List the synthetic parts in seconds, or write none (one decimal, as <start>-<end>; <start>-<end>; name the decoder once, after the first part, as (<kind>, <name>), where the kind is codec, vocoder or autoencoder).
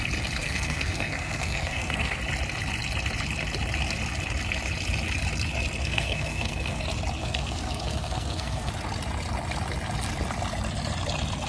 0.4-2.2 (codec, SNAC); 5.8-6.8; 7.2-8.7